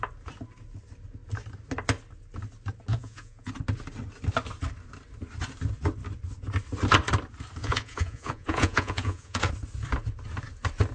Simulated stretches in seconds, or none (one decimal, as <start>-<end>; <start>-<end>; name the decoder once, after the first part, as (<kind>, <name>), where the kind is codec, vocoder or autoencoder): 2.9-3.5 (vocoder, Vocos); 7.6-9.5